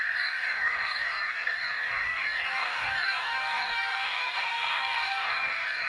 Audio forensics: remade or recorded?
remade